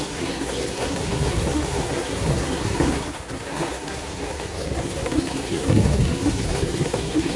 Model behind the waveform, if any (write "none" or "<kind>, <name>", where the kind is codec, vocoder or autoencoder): codec, SNAC